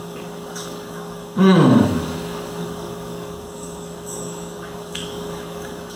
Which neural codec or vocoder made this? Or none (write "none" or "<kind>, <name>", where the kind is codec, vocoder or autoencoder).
codec, DAC